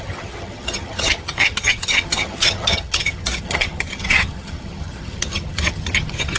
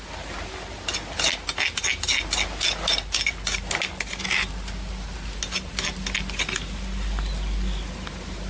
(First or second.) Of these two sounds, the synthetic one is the first